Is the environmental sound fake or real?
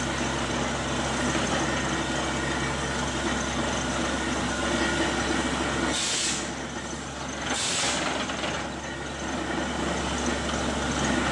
real